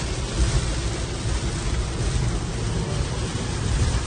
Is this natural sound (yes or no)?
yes